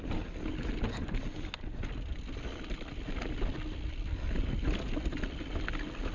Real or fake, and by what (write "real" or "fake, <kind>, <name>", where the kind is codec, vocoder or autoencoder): real